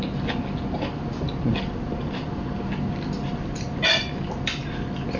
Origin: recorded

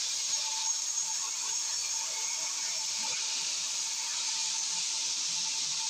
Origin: remade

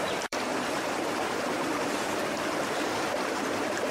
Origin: remade